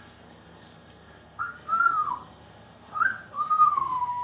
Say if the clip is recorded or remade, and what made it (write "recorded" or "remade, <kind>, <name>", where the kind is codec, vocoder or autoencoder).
remade, codec, SNAC